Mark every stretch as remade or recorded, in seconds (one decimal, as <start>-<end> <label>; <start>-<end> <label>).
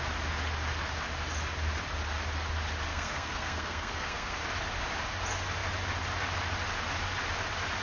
0.0-2.9 recorded; 2.9-4.4 remade; 4.4-7.8 recorded